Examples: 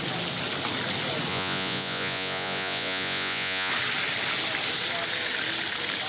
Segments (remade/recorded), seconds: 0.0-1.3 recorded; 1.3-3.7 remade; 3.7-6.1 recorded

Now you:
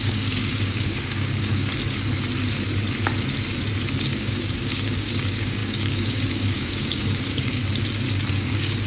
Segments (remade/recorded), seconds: 0.0-1.7 remade; 1.7-4.0 recorded; 4.0-7.6 remade; 7.6-8.3 recorded; 8.3-8.9 remade